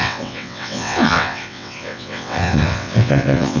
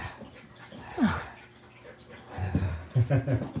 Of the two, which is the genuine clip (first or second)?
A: second